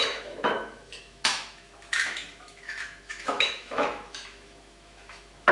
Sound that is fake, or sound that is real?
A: fake